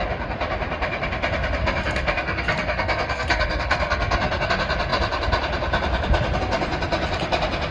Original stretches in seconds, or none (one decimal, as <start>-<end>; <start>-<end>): 0.0-1.6; 4.5-7.7